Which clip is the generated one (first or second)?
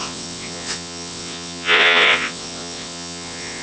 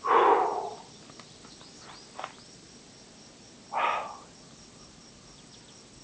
first